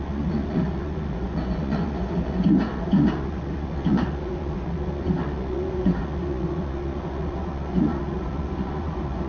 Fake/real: fake